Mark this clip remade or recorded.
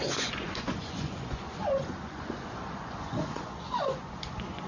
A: remade